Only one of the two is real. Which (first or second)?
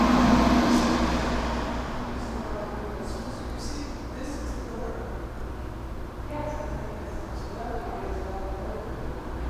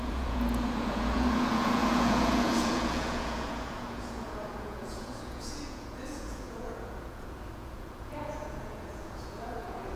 first